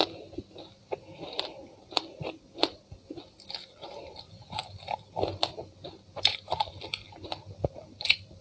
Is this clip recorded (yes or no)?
yes